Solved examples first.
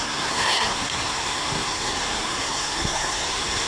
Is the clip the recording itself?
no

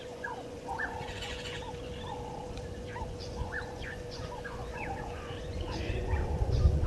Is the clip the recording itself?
no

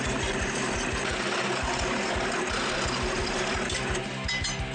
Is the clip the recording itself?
yes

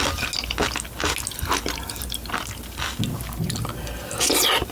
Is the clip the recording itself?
yes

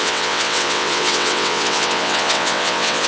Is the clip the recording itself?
no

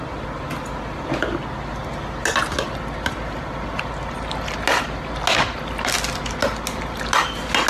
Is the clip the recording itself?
yes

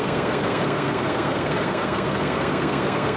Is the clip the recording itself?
no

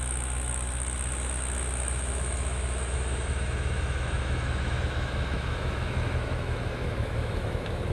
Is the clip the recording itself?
no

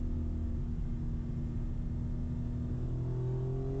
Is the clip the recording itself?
yes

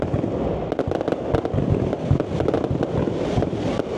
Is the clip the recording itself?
yes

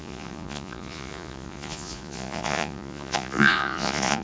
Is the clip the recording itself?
no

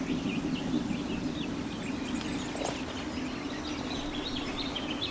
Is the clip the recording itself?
yes